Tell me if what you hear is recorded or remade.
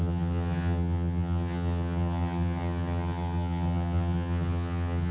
remade